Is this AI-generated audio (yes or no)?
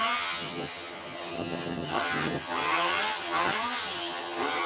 yes